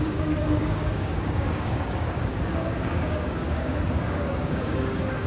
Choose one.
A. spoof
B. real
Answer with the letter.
A